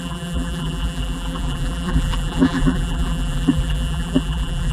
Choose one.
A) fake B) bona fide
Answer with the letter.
A